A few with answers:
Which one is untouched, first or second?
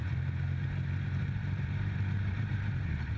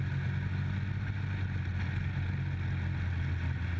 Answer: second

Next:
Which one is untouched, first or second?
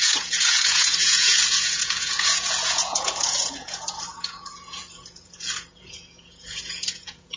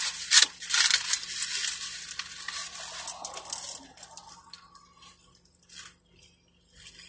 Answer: second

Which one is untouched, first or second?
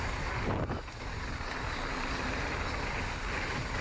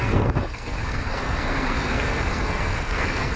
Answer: first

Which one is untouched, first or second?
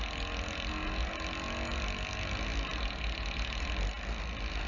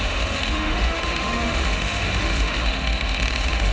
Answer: first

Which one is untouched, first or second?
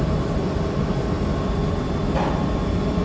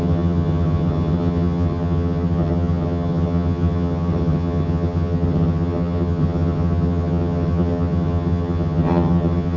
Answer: first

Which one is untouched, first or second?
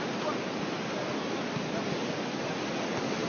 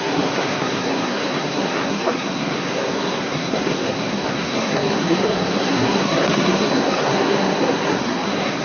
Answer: first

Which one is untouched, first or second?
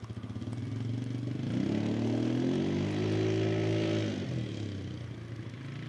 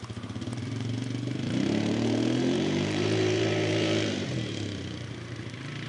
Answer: first